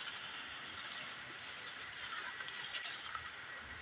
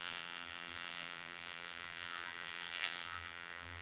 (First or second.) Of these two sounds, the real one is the first